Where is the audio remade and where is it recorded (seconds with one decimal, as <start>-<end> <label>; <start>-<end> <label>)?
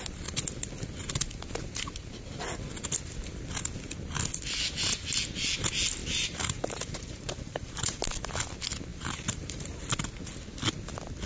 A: 0.0-6.0 recorded; 6.0-8.3 remade; 8.3-8.9 recorded; 8.9-9.9 remade; 9.9-11.3 recorded